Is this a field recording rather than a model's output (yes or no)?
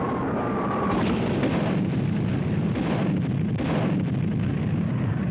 yes